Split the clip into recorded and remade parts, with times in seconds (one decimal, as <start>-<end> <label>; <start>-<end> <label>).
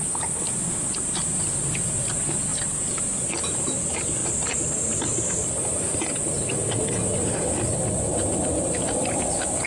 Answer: 0.0-9.7 recorded